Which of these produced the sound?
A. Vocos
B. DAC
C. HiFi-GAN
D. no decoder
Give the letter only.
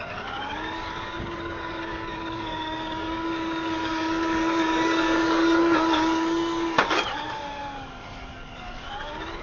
B